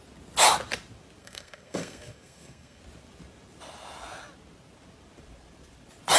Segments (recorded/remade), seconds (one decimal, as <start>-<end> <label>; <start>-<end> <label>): 0.0-1.2 recorded; 1.2-2.8 remade; 2.8-6.2 recorded